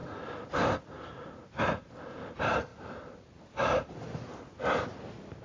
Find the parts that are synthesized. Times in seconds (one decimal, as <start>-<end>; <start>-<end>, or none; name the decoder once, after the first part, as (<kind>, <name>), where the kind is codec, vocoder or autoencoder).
none